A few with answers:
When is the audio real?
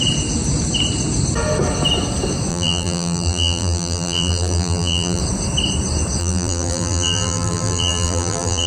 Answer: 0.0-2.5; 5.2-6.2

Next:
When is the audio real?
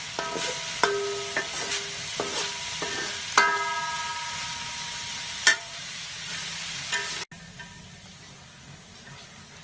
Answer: 0.0-4.1; 4.8-5.5; 6.3-9.6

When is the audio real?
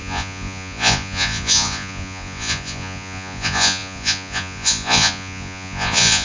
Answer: none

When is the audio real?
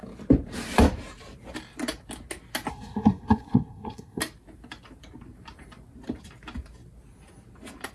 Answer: 0.0-2.7; 4.2-7.9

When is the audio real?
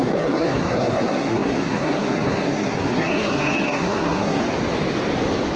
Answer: 4.4-5.6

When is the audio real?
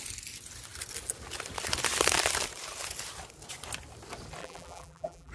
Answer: 0.0-4.4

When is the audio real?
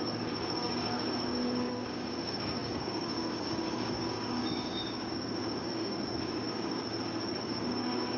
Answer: 6.8-7.4